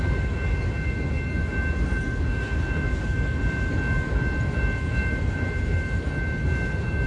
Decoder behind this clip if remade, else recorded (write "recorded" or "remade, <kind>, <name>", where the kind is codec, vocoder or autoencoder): recorded